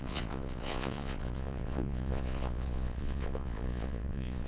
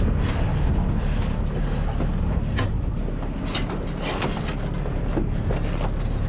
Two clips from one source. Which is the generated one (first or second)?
first